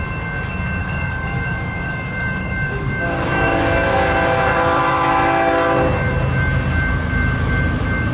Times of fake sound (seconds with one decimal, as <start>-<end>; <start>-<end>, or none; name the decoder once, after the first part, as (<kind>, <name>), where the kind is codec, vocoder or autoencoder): 0.8-3.6 (codec, DAC)